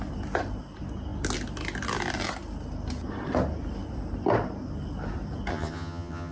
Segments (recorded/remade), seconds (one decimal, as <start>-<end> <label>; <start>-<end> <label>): 0.0-5.5 recorded; 5.5-6.3 remade